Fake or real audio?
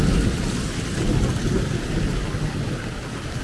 real